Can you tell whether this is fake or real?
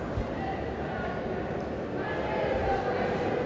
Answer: real